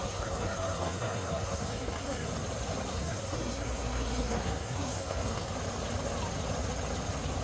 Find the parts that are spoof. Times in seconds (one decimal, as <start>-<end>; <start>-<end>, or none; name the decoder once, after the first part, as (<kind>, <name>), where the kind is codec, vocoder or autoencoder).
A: 0.0-2.3 (codec, SNAC); 2.9-5.5